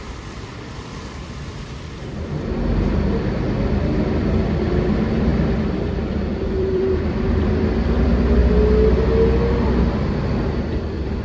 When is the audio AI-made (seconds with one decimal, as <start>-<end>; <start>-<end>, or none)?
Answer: 0.0-8.4; 10.2-11.2